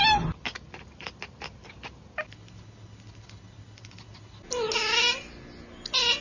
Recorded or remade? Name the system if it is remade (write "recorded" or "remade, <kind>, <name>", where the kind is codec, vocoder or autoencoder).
recorded